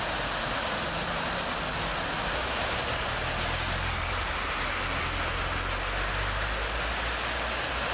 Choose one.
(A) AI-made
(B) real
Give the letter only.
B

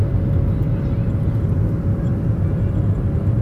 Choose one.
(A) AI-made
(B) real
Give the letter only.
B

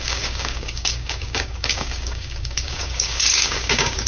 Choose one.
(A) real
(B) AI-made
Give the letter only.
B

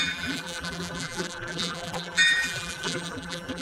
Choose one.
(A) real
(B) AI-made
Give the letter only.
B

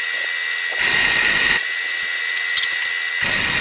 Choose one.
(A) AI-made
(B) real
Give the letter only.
B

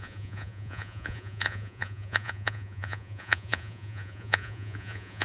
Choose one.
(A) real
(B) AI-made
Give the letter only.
B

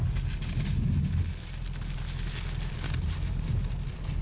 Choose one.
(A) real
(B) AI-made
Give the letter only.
A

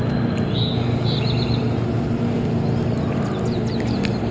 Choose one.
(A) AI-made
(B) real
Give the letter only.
B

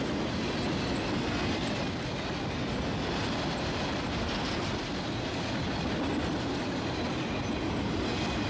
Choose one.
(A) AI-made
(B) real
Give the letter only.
B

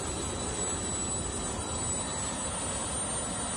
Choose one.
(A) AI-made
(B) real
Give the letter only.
B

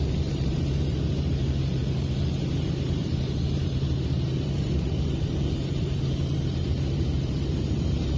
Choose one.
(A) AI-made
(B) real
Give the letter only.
A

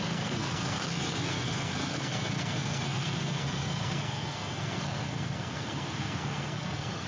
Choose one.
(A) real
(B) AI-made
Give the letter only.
B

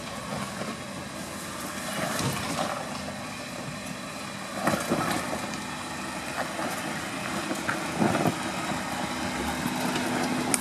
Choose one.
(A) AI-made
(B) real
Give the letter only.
B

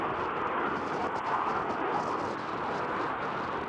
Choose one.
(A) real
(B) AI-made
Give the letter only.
A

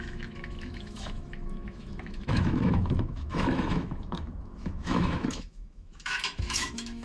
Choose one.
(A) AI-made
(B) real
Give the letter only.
A